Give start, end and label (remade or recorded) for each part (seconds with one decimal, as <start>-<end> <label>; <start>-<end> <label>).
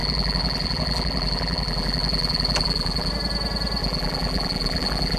0.0-3.1 remade; 3.1-3.8 recorded; 3.8-5.2 remade